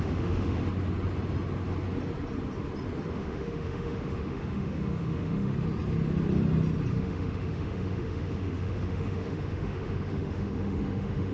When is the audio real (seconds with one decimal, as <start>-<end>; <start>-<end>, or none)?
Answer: 0.6-3.1; 5.5-6.9